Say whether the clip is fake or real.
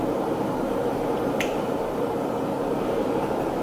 fake